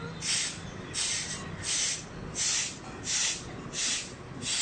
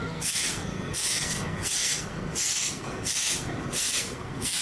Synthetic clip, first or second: second